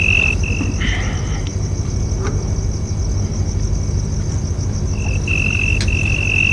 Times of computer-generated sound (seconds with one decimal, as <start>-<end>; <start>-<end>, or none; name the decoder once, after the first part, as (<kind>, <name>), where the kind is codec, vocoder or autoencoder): none